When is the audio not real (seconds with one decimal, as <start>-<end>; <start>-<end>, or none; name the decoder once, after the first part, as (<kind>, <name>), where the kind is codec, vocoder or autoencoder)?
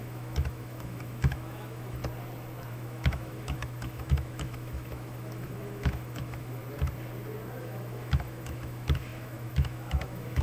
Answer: 0.0-2.0 (autoencoder, DAC-VAE); 2.7-6.6; 7.6-10.4